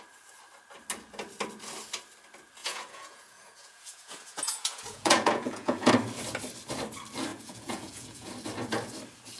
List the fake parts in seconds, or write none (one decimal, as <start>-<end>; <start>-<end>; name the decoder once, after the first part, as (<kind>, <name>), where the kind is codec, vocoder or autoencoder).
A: 2.6-5.9 (vocoder, Vocos); 7.3-8.3